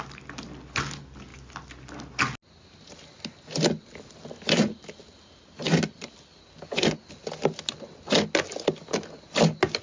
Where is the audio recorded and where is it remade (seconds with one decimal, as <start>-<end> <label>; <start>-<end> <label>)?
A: 0.0-9.8 recorded